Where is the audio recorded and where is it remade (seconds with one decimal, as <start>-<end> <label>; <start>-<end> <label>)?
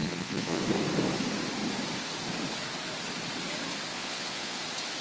0.0-0.6 remade; 0.6-3.9 recorded; 3.9-4.6 remade; 4.6-5.0 recorded